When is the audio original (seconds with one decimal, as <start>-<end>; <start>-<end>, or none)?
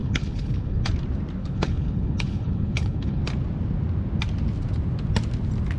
0.9-1.4; 3.2-5.8